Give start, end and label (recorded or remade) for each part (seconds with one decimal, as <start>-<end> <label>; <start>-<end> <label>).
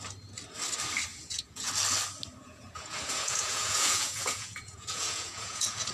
0.0-1.1 recorded; 1.1-1.7 remade; 1.7-2.4 recorded; 2.4-5.9 remade